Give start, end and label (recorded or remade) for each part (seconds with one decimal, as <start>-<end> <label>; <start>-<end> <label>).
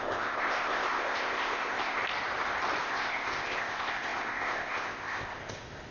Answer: 0.0-2.0 remade; 2.0-2.8 recorded; 2.8-5.9 remade